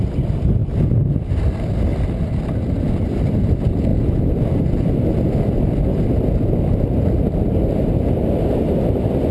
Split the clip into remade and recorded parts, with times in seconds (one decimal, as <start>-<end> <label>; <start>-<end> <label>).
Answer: 0.0-0.6 remade; 0.6-1.4 recorded; 1.4-1.9 remade; 1.9-3.0 recorded; 3.0-3.9 remade; 3.9-8.2 recorded; 8.2-9.3 remade